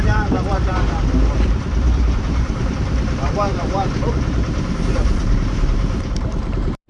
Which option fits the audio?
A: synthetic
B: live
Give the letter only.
A